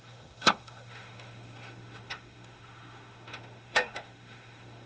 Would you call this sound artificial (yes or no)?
yes